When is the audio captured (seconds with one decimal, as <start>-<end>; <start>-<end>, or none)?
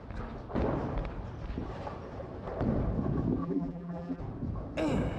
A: 0.0-3.4; 4.2-5.2